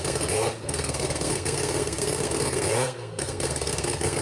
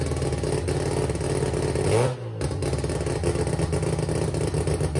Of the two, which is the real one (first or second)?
second